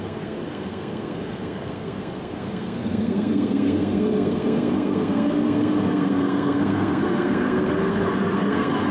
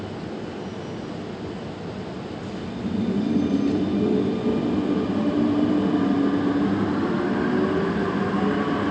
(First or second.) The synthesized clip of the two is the first